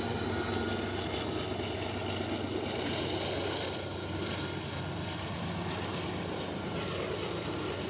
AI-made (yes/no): no